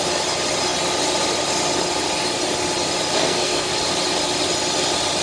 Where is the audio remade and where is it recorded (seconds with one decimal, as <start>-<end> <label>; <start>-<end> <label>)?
0.0-3.2 recorded; 3.2-3.7 remade; 3.7-5.2 recorded